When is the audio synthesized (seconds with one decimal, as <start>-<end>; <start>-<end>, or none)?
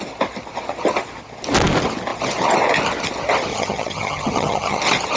3.5-4.8